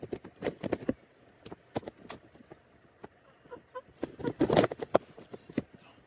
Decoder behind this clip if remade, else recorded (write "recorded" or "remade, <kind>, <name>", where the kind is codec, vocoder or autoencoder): recorded